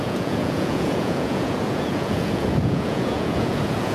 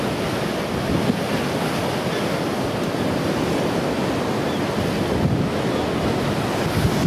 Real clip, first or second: second